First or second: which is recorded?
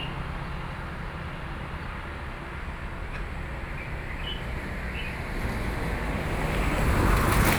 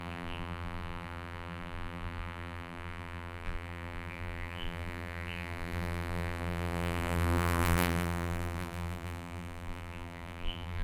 first